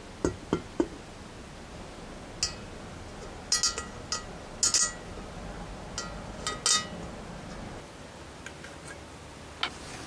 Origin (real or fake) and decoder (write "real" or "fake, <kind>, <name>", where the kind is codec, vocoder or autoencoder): real